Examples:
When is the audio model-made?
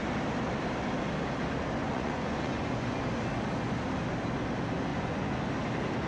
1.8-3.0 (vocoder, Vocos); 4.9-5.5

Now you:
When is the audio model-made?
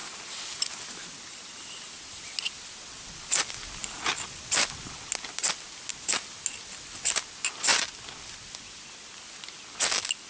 0.0-0.8 (vocoder, BigVGAN v2)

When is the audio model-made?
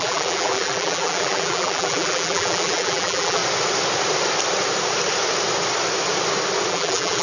0.0-3.4 (vocoder, BigVGAN v2); 6.7-7.2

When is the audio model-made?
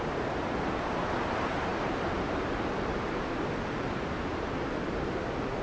none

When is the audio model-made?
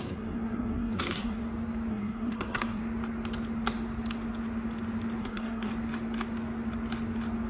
0.0-1.4 (codec, SNAC); 1.9-2.8; 5.2-5.7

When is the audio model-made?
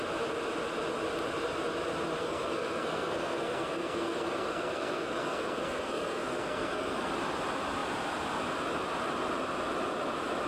2.2-7.1 (codec, SNAC)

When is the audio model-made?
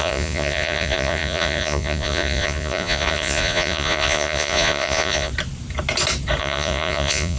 0.0-5.3 (vocoder, Vocos); 6.4-7.4